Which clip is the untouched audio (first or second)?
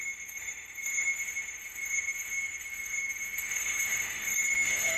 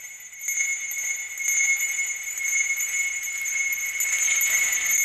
second